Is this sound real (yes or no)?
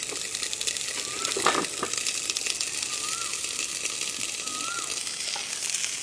yes